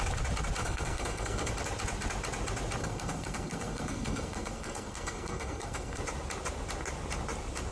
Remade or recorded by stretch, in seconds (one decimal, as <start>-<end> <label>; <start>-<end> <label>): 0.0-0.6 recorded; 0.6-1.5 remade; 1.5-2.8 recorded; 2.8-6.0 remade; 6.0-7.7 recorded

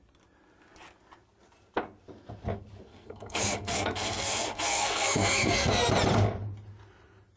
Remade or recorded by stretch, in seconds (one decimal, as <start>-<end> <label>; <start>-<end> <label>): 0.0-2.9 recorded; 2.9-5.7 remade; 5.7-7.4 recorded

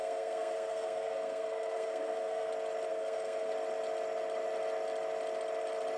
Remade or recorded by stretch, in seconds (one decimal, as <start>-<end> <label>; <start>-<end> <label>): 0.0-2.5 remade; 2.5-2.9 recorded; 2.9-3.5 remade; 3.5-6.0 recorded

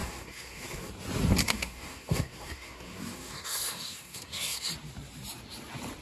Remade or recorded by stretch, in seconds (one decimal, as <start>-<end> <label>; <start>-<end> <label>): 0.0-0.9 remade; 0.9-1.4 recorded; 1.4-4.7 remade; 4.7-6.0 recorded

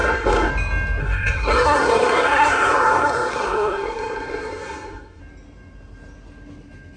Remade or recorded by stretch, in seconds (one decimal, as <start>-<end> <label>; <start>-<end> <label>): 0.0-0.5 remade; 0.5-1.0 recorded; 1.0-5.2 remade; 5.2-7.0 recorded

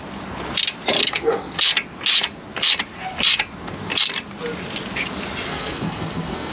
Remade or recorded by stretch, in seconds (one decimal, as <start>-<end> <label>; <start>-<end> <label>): 0.0-1.0 recorded; 1.0-1.7 remade; 1.7-5.5 recorded; 5.5-6.5 remade

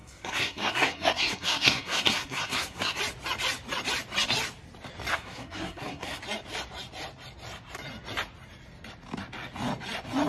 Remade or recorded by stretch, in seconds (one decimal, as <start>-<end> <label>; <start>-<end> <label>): 0.0-3.0 remade; 3.0-5.1 recorded; 5.1-6.2 remade; 6.2-10.3 recorded

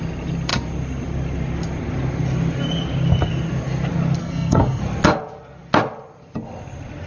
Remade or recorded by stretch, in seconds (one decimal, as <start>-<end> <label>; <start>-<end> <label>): 0.0-4.2 recorded; 4.2-4.8 remade; 4.8-7.1 recorded